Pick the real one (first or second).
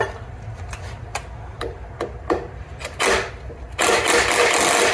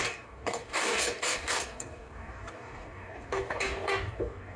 first